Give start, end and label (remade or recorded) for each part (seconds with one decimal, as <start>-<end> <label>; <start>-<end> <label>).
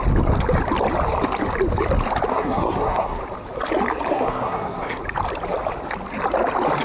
0.0-2.3 recorded; 2.3-3.2 remade; 3.2-4.1 recorded; 4.1-5.0 remade; 5.0-6.8 recorded